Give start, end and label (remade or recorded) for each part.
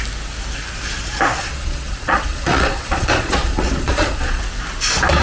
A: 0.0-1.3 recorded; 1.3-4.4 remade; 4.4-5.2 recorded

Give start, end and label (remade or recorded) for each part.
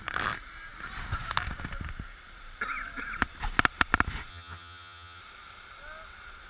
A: 0.0-4.3 recorded; 4.3-5.2 remade; 5.2-6.5 recorded